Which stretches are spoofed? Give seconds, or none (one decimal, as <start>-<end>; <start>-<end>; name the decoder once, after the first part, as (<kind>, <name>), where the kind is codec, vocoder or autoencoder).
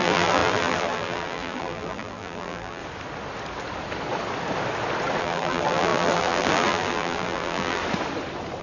0.0-2.8 (vocoder, BigVGAN v2); 5.2-7.8